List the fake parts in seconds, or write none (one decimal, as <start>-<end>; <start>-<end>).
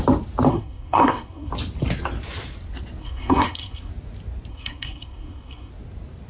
0.5-1.5; 3.0-3.9; 4.5-5.7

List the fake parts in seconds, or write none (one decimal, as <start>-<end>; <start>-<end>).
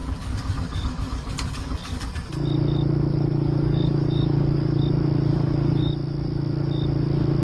0.0-2.1; 3.1-4.8; 5.3-5.9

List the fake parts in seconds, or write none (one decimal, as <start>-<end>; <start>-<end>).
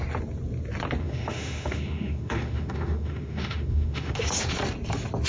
1.0-4.2